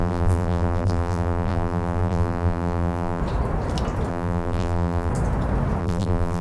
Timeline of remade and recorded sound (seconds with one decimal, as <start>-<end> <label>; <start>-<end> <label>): 0.0-3.2 remade; 3.2-4.1 recorded; 4.1-5.1 remade; 5.1-5.8 recorded; 5.8-6.4 remade